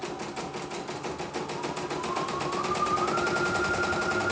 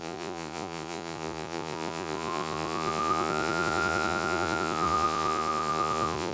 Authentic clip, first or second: first